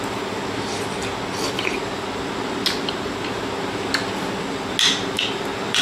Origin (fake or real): real